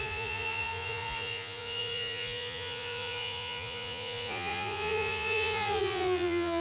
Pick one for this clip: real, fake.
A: fake